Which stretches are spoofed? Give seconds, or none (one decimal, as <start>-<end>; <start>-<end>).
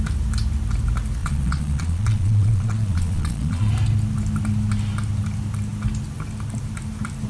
1.2-3.7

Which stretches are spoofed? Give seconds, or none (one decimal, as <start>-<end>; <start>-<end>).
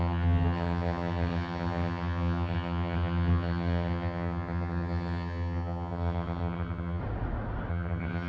0.0-7.0; 7.7-8.3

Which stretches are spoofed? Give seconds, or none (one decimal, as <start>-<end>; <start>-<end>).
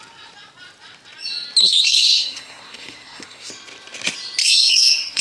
1.6-3.5; 4.4-5.2